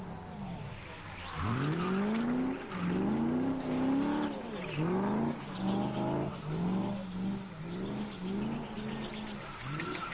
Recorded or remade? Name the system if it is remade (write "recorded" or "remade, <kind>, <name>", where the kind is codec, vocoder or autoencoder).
recorded